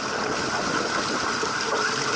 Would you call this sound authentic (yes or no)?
yes